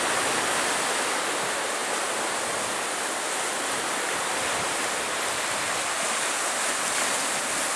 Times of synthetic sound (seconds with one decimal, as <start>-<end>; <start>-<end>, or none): none